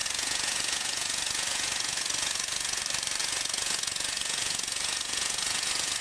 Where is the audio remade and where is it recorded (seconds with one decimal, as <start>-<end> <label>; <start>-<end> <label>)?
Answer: 0.0-2.8 remade; 2.8-3.2 recorded; 3.2-6.0 remade